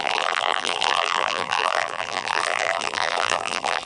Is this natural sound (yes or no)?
no